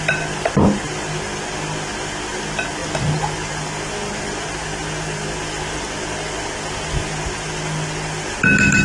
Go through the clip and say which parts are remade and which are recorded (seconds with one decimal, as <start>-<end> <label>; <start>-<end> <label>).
0.0-8.8 recorded